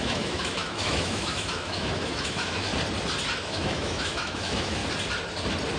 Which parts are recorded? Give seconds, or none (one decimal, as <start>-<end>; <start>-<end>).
2.7-3.4; 4.8-5.8

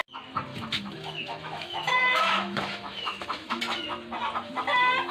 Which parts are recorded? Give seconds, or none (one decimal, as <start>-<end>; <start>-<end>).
0.0-0.5; 3.6-5.1

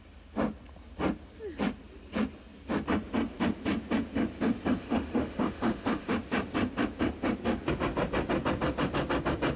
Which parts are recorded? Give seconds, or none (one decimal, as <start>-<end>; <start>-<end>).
0.0-4.8; 6.1-9.6

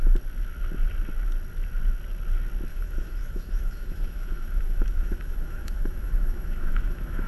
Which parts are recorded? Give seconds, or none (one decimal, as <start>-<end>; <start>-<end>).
0.0-2.7